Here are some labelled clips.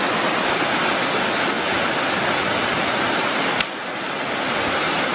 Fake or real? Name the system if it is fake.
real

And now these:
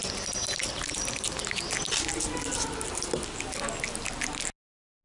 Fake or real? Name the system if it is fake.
real